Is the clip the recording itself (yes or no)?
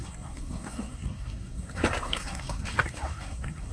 no